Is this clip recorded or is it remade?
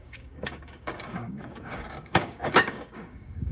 remade